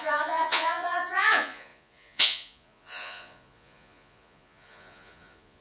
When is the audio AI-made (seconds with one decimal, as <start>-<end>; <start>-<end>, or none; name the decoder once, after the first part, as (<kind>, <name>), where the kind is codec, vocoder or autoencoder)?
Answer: 0.0-5.6 (vocoder, Vocos)